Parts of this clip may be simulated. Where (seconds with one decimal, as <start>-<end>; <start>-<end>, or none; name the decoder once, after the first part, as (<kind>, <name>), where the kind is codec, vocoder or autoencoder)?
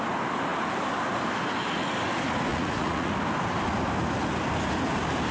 2.5-3.1 (vocoder, Vocos)